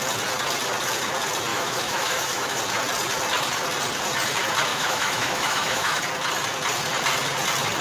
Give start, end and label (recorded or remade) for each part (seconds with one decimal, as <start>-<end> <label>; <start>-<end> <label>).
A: 0.0-1.5 recorded; 1.5-2.6 remade; 2.6-4.7 recorded; 4.7-6.0 remade; 6.0-7.8 recorded